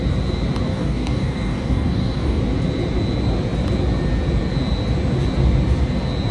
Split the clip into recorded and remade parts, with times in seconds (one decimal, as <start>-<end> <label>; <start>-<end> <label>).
0.0-0.7 recorded; 0.7-2.4 remade; 2.4-6.3 recorded